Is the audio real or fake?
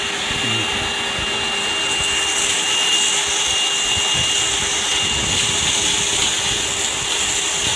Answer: real